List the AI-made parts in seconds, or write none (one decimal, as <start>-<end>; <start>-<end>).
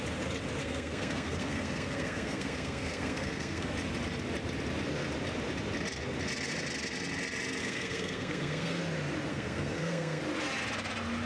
0.6-3.7; 7.6-8.8; 9.3-10.2